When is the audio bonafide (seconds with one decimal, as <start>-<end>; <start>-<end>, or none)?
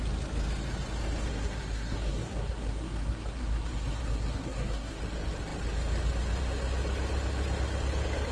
0.0-1.3; 5.0-8.3